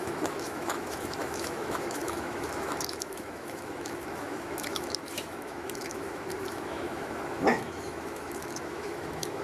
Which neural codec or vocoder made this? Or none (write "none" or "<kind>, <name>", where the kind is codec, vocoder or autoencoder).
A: autoencoder, DAC-VAE